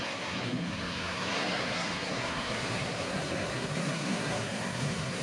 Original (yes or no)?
no